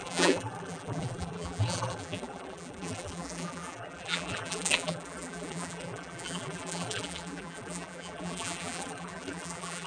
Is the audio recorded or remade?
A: remade